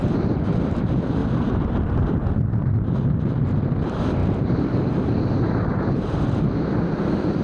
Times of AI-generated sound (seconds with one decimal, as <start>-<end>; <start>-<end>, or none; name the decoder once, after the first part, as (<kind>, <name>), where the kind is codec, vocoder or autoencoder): 1.2-2.4 (vocoder, BigVGAN v2); 4.2-6.4